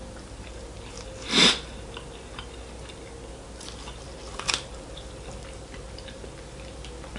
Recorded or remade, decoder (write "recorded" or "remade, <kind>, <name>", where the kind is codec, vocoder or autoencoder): recorded